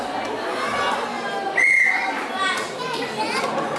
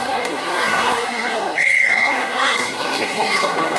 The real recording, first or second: first